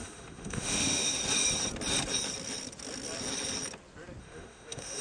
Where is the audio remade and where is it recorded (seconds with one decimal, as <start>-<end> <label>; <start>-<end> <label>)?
0.0-1.2 remade; 1.2-4.2 recorded; 4.2-5.0 remade